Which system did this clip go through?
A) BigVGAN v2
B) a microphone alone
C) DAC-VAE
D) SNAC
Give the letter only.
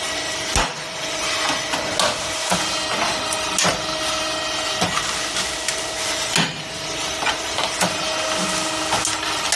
B